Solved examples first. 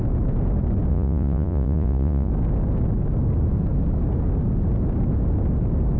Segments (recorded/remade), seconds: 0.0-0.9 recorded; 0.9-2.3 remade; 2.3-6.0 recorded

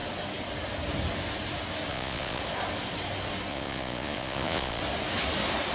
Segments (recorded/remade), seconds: 0.0-1.9 recorded; 1.9-2.4 remade; 2.4-3.5 recorded; 3.5-4.8 remade; 4.8-5.7 recorded

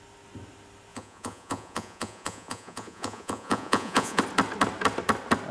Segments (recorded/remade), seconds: 0.0-0.9 recorded; 0.9-4.2 remade; 4.2-5.5 recorded

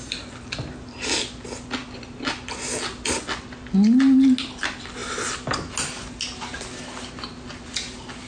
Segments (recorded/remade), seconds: 0.0-8.3 recorded

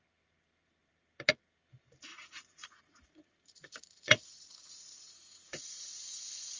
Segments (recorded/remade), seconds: 0.0-2.1 recorded; 2.1-6.0 remade; 6.0-6.6 recorded

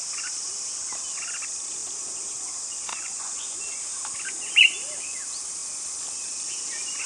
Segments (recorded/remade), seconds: 0.0-2.9 recorded; 2.9-3.6 remade; 3.6-7.1 recorded